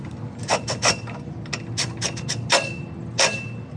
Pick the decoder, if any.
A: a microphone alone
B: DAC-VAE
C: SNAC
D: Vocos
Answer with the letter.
A